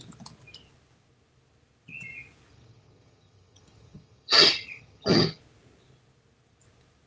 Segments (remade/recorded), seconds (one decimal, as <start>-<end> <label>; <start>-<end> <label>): 0.0-2.5 recorded; 2.5-5.4 remade; 5.4-7.1 recorded